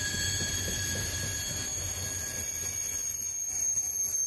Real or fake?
real